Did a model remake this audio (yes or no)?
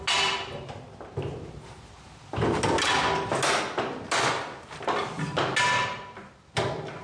no